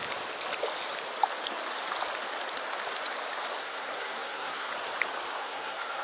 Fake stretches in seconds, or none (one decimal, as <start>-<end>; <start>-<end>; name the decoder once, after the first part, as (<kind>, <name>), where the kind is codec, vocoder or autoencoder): 3.6-4.7 (codec, SNAC); 5.4-6.0